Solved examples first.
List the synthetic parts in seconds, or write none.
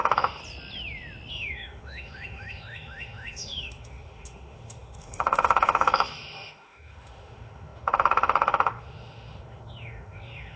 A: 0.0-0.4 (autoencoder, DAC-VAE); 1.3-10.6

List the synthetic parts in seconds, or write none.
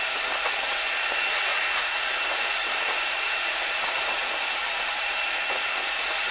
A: 0.0-6.3 (vocoder, Vocos)